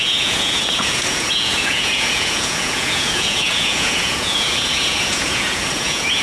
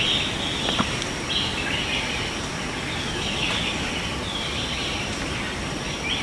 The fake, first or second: first